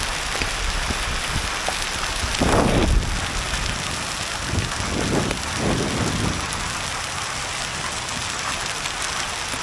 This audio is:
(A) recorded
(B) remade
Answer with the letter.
A